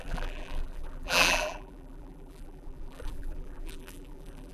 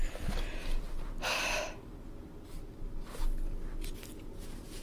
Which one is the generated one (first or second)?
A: first